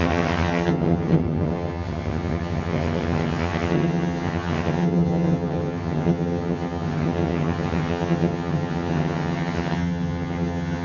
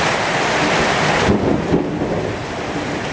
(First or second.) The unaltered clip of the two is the second